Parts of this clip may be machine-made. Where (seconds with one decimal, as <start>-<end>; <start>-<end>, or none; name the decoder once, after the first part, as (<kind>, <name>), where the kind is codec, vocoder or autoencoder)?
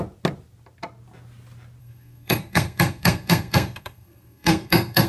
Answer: 1.8-5.1 (codec, SNAC)